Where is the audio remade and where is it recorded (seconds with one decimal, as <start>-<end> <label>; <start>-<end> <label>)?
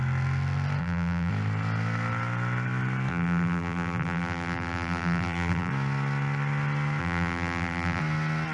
0.0-0.8 recorded; 0.8-1.3 remade; 1.3-3.1 recorded; 3.1-5.7 remade; 5.7-7.0 recorded; 7.0-8.0 remade; 8.0-8.5 recorded